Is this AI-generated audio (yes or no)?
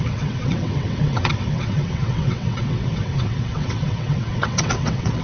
yes